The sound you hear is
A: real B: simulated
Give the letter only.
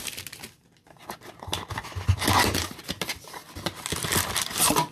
A